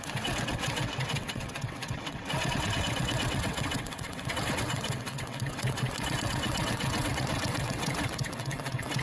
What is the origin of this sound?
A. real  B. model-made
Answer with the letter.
B